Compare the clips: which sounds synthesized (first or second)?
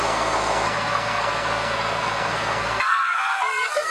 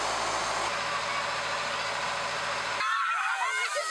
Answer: first